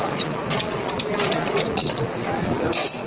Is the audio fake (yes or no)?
yes